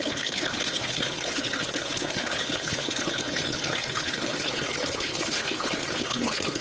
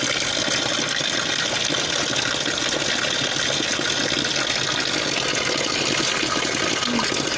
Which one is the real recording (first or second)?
second